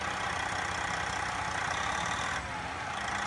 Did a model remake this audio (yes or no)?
no